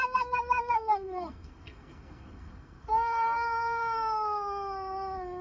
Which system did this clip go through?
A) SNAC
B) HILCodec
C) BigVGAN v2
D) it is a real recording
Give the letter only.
A